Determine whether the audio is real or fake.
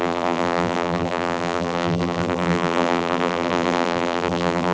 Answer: fake